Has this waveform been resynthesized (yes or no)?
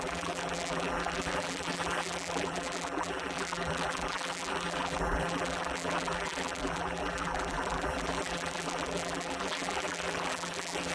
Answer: yes